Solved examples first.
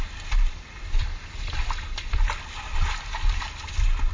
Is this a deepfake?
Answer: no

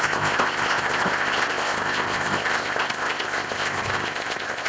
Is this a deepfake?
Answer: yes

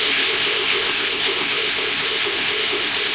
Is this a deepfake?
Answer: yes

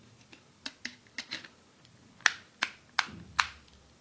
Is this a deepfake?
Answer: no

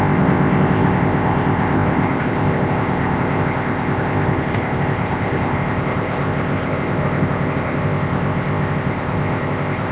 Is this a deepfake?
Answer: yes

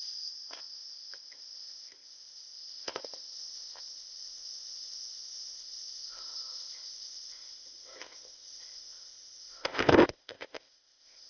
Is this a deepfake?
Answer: yes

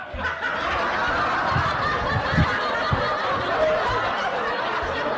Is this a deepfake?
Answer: no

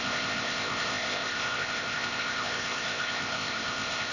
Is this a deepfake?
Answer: yes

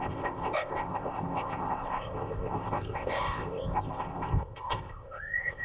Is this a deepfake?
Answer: yes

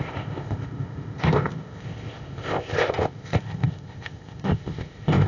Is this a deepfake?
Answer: yes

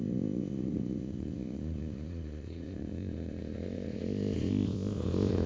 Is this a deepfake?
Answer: yes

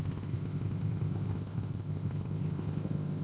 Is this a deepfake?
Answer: yes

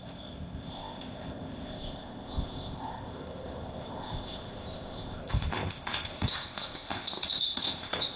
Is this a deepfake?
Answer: yes